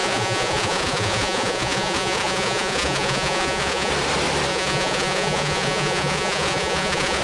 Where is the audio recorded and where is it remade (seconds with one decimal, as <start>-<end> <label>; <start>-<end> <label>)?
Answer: 0.0-3.9 remade; 3.9-4.5 recorded; 4.5-7.2 remade